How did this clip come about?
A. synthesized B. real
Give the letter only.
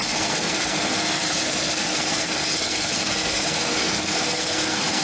A